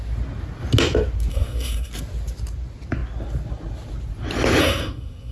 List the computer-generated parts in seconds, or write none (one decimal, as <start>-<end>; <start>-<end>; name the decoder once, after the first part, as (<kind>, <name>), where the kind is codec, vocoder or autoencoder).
1.3-1.9 (codec, SNAC); 4.6-5.3